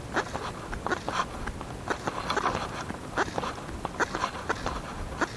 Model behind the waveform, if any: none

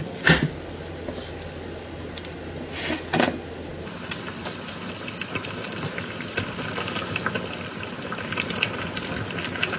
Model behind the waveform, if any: none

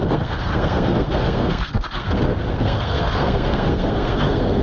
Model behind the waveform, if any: codec, SNAC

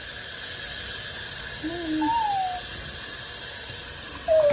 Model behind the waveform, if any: none